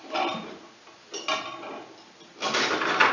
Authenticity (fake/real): real